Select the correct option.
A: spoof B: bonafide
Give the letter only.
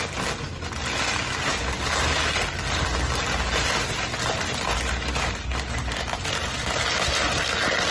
B